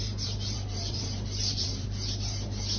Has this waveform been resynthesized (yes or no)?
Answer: yes